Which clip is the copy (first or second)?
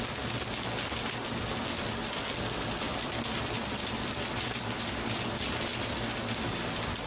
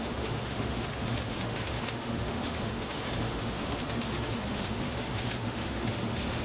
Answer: second